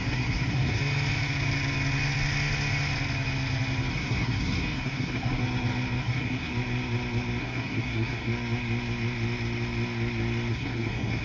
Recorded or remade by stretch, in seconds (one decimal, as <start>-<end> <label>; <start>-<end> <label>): 0.0-0.8 remade; 0.8-3.9 recorded; 3.9-5.4 remade; 5.4-6.0 recorded; 6.0-6.5 remade; 6.5-7.4 recorded; 7.4-8.3 remade; 8.3-10.5 recorded; 10.5-11.2 remade